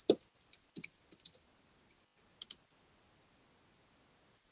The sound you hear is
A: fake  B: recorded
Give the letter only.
B